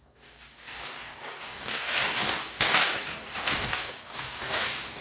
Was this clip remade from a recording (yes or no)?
yes